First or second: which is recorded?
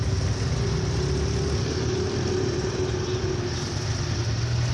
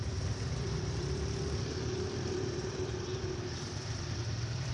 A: first